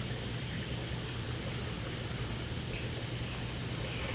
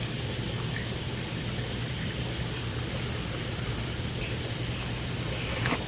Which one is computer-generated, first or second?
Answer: second